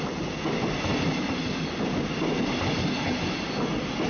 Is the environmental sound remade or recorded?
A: recorded